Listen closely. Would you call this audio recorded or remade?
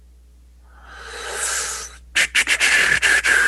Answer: recorded